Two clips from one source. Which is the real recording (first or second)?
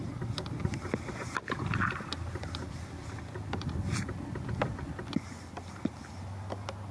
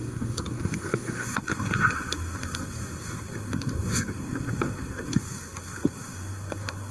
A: first